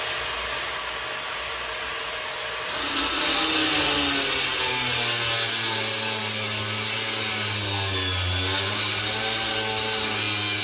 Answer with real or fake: real